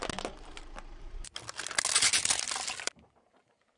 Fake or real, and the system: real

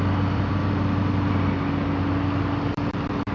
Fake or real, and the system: fake, vocoder, BigVGAN v2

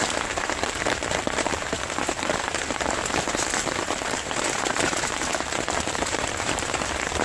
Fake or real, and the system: fake, vocoder, BigVGAN v2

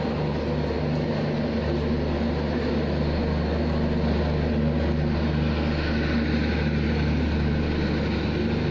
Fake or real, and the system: real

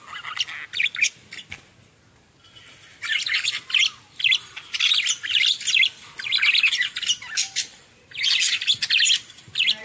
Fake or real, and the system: real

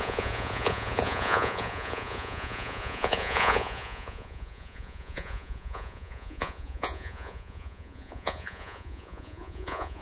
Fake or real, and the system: fake, vocoder, Vocos